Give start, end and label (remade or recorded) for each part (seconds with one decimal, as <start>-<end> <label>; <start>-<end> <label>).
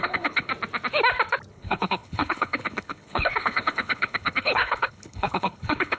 0.0-0.5 remade; 0.5-1.5 recorded; 1.5-6.0 remade